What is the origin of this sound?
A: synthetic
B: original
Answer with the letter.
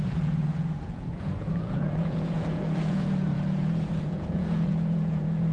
A